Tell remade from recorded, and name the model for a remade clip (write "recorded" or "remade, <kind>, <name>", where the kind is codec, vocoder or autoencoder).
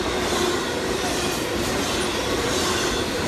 recorded